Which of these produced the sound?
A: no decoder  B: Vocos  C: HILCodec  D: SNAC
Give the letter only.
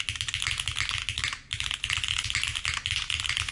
A